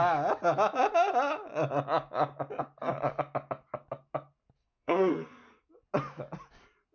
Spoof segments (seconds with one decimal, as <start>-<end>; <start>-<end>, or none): 4.6-5.7